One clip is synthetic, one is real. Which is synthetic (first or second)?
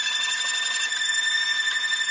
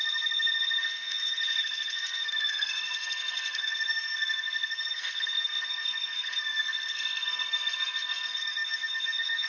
second